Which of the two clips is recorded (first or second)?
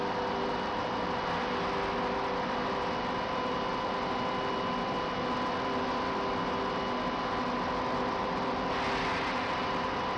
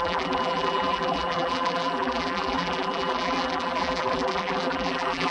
first